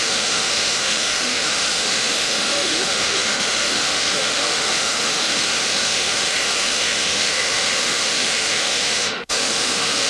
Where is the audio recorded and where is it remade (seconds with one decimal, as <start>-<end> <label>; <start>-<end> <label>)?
0.0-10.1 remade